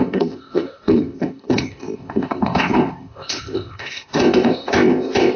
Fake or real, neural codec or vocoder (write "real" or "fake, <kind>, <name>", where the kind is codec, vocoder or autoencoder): fake, codec, ZipCodec